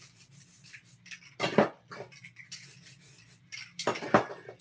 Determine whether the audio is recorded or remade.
recorded